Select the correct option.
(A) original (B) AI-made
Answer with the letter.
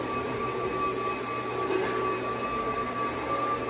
A